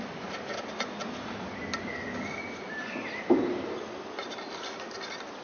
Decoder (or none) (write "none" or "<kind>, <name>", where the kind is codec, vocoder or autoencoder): none